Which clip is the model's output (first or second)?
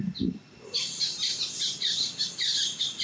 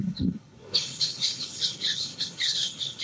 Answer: second